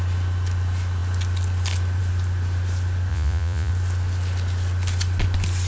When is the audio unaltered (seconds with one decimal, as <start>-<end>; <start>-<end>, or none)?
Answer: 0.0-3.1; 3.7-5.7